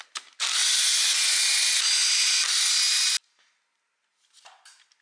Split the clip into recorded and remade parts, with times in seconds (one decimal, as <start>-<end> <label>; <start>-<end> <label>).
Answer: 0.0-5.0 recorded